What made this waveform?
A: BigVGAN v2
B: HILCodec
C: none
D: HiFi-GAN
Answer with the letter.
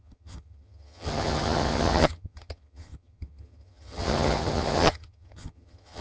D